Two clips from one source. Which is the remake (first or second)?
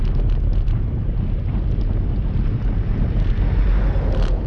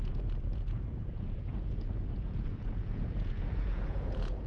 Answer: second